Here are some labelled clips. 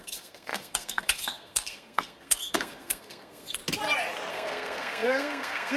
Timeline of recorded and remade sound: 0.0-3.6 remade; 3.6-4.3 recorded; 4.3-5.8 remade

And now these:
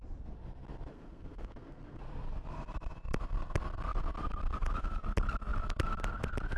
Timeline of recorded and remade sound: 0.0-0.9 recorded; 0.9-2.0 remade; 2.0-6.6 recorded

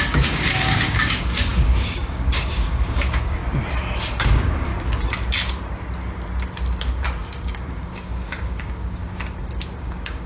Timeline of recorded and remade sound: 0.0-3.4 remade; 3.4-4.0 recorded; 4.0-4.7 remade; 4.7-7.2 recorded; 7.2-9.0 remade; 9.0-9.8 recorded; 9.8-10.3 remade

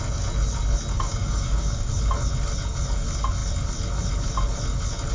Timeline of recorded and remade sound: 0.0-0.9 recorded; 0.9-1.9 remade; 1.9-5.1 recorded

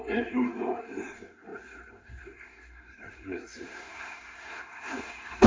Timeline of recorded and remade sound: 0.0-5.5 remade

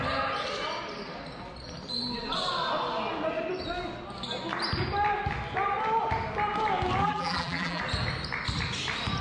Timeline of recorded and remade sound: 0.0-7.0 recorded; 7.0-7.8 remade; 7.8-9.2 recorded